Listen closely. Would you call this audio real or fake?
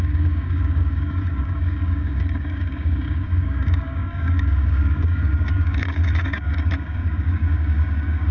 fake